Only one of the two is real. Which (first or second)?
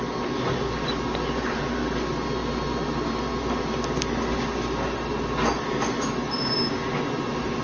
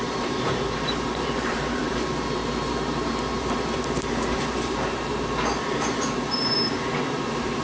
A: first